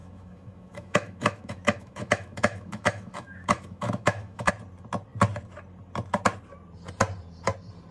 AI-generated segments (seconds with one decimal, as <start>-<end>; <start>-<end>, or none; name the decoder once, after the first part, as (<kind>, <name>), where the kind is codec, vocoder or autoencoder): 0.0-4.5 (autoencoder, DAC-VAE)